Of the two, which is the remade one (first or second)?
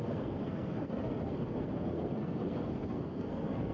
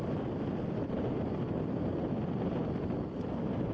first